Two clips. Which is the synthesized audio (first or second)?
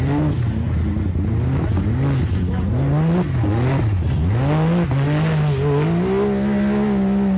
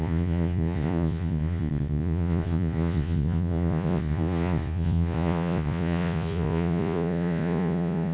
second